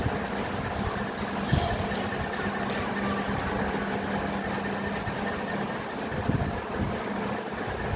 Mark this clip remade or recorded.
recorded